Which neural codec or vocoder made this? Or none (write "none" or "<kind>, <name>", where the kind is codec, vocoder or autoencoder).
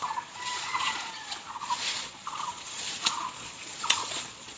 vocoder, Vocos